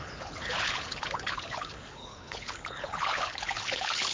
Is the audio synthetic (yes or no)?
yes